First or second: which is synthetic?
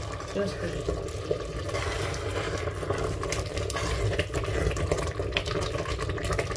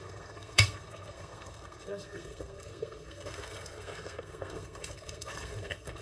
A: second